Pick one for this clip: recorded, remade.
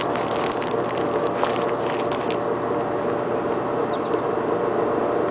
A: recorded